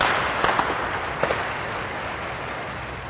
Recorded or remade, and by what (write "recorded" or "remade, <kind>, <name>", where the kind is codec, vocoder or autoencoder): recorded